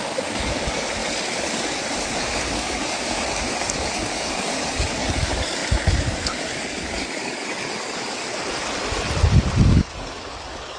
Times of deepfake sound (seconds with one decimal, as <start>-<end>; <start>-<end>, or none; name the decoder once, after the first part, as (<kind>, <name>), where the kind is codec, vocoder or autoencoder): 0.0-8.3 (codec, DAC); 9.6-10.8